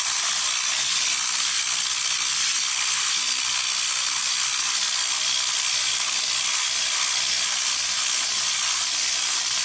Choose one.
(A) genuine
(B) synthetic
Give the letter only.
A